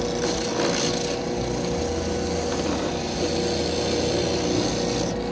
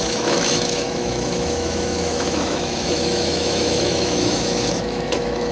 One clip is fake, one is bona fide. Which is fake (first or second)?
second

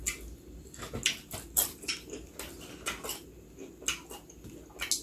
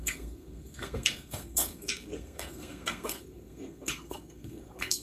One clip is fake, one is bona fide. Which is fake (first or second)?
second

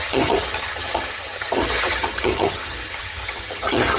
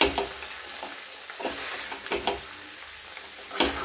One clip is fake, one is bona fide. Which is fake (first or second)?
first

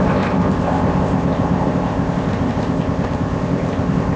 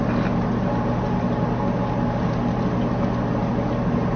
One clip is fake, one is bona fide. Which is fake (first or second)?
first